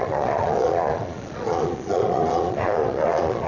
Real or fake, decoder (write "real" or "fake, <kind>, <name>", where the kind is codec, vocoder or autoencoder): fake, vocoder, Vocos